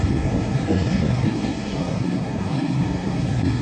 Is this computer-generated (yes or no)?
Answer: yes